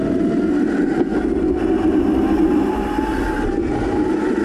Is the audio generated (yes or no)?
no